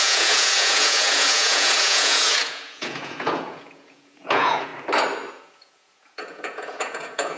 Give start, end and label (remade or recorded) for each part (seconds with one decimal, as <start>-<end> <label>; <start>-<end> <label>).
0.0-4.7 remade; 4.7-5.3 recorded; 5.3-7.4 remade